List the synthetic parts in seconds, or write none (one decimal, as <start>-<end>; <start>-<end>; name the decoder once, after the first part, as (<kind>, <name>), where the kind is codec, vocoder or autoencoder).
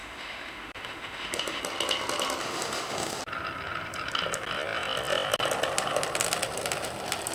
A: 0.0-1.6 (autoencoder, DAC-VAE); 2.4-3.2